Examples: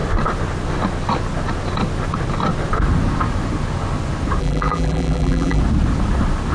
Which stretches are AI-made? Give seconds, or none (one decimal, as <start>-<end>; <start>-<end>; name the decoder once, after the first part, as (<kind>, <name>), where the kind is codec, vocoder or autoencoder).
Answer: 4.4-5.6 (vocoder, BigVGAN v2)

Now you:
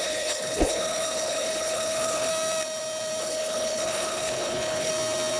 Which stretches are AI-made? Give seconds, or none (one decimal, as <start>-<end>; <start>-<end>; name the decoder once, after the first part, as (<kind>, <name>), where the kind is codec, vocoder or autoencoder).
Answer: 0.0-2.3 (codec, HILCodec); 3.2-4.9

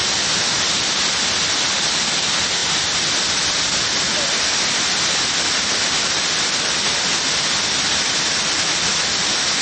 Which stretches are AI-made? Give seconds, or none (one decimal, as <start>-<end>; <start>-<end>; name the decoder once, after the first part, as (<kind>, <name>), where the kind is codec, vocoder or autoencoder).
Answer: none

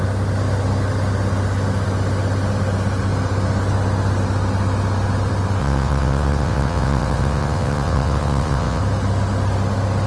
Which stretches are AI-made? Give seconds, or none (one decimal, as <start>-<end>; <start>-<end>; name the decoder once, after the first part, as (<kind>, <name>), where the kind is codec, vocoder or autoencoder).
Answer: 5.6-8.8 (vocoder, WaveNeXt)

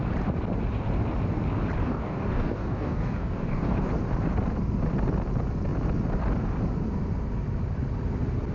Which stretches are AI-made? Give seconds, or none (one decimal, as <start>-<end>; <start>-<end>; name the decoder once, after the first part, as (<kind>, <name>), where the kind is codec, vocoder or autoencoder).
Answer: 1.8-3.9 (codec, DAC)

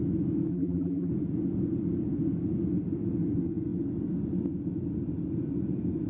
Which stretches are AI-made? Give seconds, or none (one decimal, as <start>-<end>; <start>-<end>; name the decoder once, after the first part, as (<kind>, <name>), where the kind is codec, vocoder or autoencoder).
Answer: 0.5-1.1 (vocoder, BigVGAN v2)

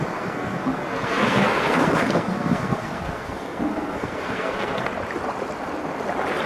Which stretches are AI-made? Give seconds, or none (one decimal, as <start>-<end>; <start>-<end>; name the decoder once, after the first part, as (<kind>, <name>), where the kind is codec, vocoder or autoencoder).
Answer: 0.0-4.9 (codec, SNAC)